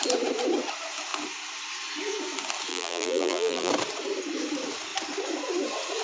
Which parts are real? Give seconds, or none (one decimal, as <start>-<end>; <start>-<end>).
0.0-2.7; 3.7-6.0